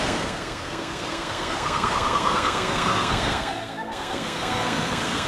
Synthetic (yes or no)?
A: yes